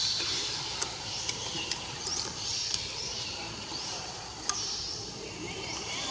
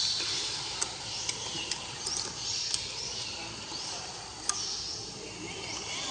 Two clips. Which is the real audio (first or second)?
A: second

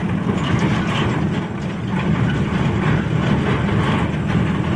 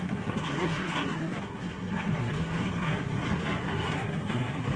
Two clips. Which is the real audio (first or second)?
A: first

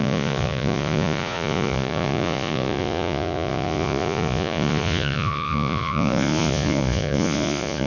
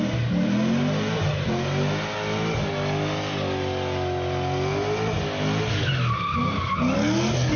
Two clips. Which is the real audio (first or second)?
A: second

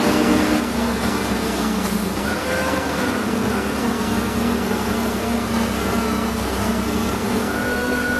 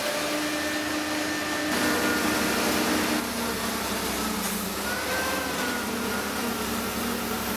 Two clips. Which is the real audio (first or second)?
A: second